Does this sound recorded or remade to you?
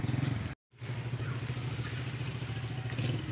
recorded